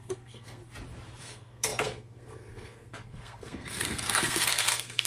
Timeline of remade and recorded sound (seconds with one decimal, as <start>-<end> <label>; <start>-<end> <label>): 0.0-0.6 remade; 0.6-1.2 recorded; 1.2-5.1 remade

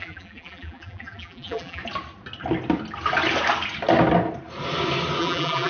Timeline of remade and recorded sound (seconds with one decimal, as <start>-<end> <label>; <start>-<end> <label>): 0.0-1.8 remade; 1.8-5.2 recorded; 5.2-5.7 remade